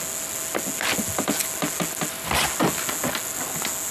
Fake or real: real